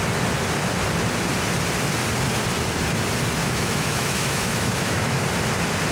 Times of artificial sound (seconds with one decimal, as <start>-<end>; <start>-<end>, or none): 3.4-5.2